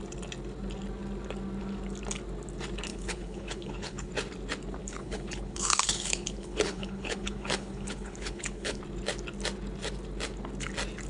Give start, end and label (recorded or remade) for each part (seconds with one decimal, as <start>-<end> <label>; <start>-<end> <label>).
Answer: 0.0-2.9 recorded; 2.9-4.1 remade; 4.1-4.8 recorded; 4.8-8.8 remade; 8.8-11.1 recorded